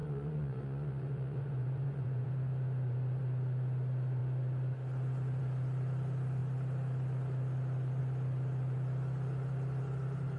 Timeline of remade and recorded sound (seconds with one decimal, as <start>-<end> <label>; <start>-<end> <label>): 0.0-2.3 remade; 2.3-10.4 recorded